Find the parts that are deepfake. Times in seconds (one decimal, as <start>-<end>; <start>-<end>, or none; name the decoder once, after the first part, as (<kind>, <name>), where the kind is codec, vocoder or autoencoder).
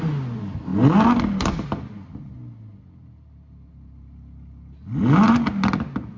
none